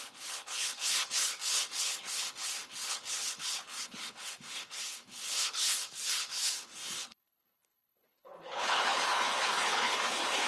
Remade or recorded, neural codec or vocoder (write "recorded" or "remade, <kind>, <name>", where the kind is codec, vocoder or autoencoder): remade, codec, HILCodec